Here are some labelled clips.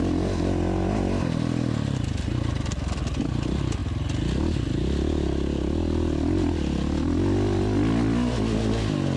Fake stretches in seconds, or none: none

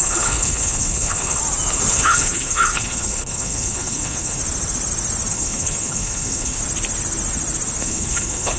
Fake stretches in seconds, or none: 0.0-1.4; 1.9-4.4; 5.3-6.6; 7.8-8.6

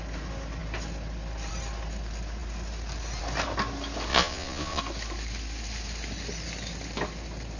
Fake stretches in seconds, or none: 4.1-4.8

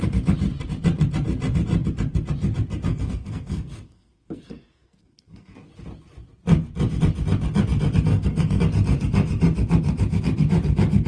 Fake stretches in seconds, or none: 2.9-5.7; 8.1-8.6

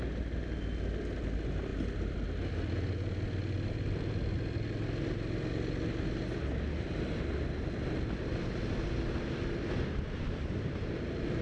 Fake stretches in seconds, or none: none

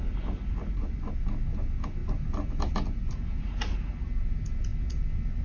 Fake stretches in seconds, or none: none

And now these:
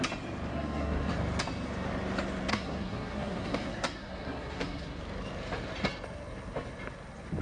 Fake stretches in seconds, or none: 0.5-1.1; 2.5-5.0

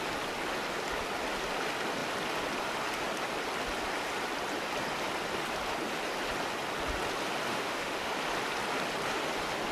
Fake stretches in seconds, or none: 7.5-8.1